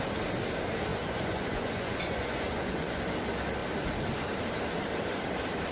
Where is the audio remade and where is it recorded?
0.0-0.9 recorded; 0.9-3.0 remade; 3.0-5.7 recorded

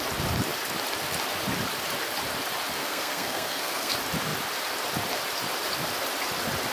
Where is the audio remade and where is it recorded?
0.0-2.8 recorded; 2.8-3.9 remade; 3.9-6.7 recorded

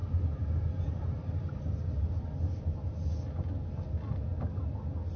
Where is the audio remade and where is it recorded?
0.0-3.1 remade; 3.1-5.2 recorded